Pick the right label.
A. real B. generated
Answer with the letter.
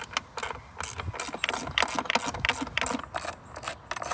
A